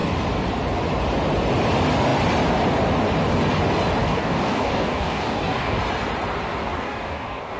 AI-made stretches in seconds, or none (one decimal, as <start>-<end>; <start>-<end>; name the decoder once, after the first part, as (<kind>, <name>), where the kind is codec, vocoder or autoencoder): 4.0-5.8 (codec, DAC); 6.6-7.6